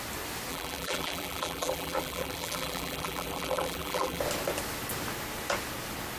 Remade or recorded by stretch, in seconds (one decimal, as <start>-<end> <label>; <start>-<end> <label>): 0.0-0.5 recorded; 0.5-4.2 remade; 4.2-6.2 recorded